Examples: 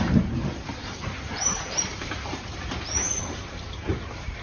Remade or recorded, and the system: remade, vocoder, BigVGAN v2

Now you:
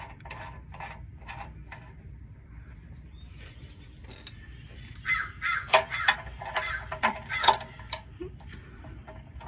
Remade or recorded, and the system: remade, vocoder, BigVGAN v2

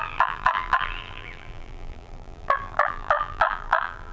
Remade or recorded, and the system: remade, vocoder, BigVGAN v2